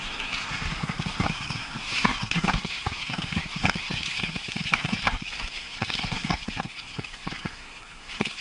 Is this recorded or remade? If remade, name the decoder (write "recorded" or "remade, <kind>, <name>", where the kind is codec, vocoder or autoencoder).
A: remade, codec, SNAC